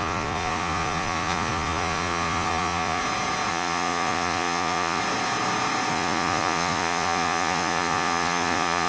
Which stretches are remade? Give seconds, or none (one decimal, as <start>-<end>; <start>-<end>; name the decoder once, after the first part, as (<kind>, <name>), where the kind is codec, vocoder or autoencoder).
0.0-3.0 (vocoder, Vocos); 3.5-5.0; 5.9-8.9

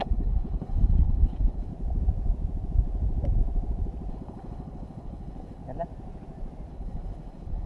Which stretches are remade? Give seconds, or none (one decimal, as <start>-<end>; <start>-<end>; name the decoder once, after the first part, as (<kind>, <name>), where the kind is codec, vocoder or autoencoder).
0.0-1.7 (codec, HILCodec); 4.1-5.6; 6.7-7.7

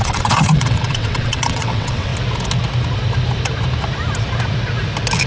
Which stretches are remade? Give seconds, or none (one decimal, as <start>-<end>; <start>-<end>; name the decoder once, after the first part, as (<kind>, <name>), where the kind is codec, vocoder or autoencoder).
0.0-2.1 (vocoder, WaveNeXt)

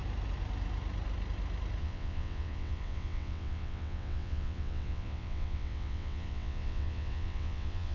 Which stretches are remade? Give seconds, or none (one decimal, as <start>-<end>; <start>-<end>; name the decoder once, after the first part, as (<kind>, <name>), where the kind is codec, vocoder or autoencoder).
1.8-7.9 (vocoder, WaveNeXt)

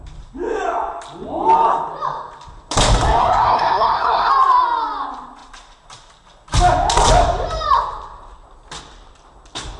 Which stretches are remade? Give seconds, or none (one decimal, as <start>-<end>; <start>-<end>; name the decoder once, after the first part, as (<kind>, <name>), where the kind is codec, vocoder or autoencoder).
3.2-4.3 (codec, SNAC)

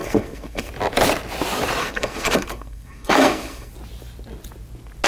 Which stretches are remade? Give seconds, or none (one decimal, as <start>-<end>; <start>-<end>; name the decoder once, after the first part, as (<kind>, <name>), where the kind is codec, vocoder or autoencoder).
0.0-0.7 (codec, SNAC); 1.8-3.7

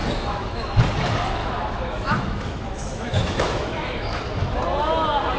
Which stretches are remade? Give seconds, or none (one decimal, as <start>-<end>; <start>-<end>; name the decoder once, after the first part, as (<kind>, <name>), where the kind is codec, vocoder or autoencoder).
0.0-0.8 (autoencoder, DAC-VAE); 1.4-4.2

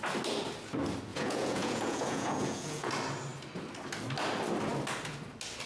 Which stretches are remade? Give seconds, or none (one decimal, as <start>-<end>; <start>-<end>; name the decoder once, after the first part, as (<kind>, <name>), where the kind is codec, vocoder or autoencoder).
1.1-2.9 (vocoder, Vocos)